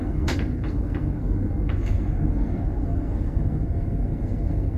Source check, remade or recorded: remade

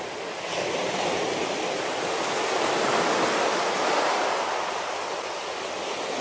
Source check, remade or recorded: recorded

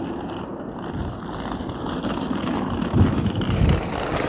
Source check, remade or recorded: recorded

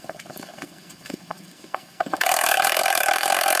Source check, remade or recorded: remade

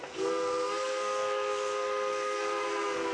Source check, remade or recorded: remade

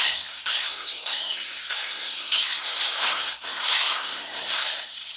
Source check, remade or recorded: remade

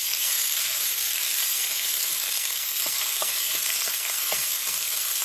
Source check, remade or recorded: remade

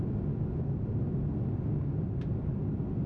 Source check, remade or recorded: recorded